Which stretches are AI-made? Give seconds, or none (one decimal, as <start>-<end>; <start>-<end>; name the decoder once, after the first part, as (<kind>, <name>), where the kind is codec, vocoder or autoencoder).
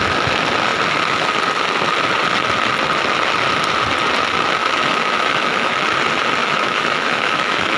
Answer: 4.6-5.7 (autoencoder, DAC-VAE); 6.4-7.8